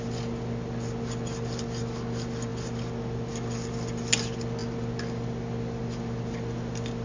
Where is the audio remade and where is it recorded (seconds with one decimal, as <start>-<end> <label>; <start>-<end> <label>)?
0.0-7.0 recorded

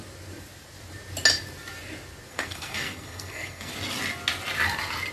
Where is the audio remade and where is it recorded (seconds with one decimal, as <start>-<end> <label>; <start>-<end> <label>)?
0.0-2.3 recorded; 2.3-3.7 remade; 3.7-5.1 recorded

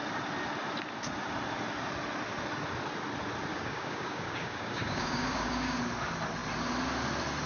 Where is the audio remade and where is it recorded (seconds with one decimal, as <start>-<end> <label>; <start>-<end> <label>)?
0.0-3.5 recorded; 3.5-5.8 remade; 5.8-7.5 recorded

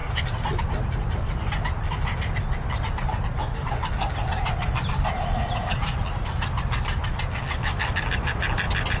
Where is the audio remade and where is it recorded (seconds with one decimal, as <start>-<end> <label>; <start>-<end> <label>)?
0.0-9.0 recorded

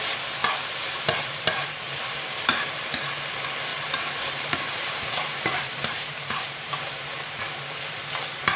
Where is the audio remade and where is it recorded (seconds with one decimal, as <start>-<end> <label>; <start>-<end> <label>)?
0.0-0.4 recorded; 0.4-2.0 remade; 2.0-3.7 recorded; 3.7-7.4 remade; 7.4-8.6 recorded

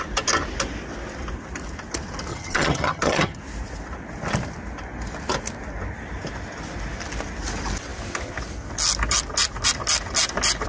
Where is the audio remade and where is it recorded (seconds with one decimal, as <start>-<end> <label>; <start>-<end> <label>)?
0.0-2.3 recorded; 2.3-3.4 remade; 3.4-10.7 recorded

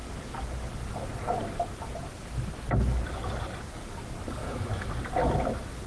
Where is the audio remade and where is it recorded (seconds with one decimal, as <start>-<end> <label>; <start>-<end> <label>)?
0.0-4.4 recorded; 4.4-4.9 remade; 4.9-5.9 recorded

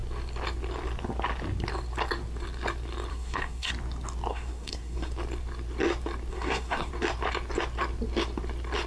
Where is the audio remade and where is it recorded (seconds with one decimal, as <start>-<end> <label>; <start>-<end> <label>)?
0.0-3.1 recorded; 3.1-3.7 remade; 3.7-4.3 recorded; 4.3-5.1 remade; 5.1-6.3 recorded; 6.3-6.9 remade; 6.9-8.9 recorded